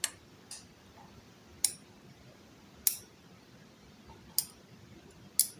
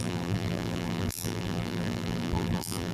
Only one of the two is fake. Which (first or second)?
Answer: second